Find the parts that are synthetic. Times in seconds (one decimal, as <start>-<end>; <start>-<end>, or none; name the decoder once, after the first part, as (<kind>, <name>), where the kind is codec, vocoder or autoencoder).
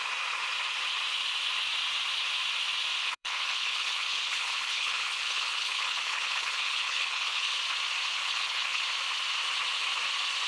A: 3.0-7.6 (codec, HILCodec); 8.2-8.8